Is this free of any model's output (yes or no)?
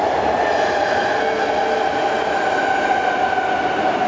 yes